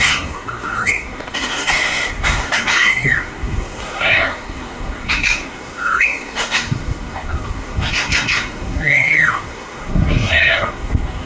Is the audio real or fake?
fake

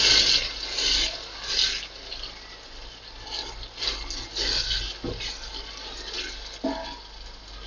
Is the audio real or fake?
real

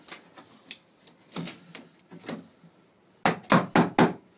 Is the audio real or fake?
real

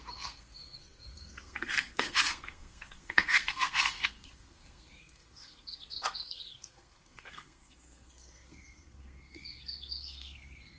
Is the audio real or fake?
fake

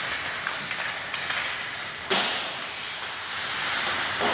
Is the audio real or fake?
real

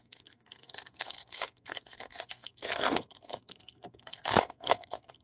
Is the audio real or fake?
fake